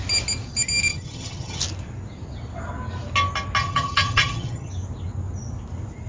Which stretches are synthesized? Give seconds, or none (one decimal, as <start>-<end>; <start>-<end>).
0.9-1.6; 3.6-4.7